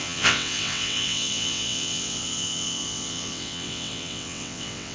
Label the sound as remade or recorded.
remade